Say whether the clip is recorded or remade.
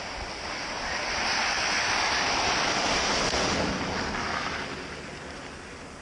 recorded